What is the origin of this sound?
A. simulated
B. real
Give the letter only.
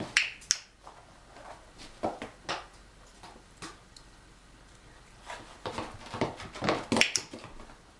B